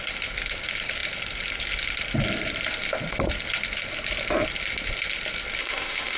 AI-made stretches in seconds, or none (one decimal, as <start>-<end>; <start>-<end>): 5.6-6.2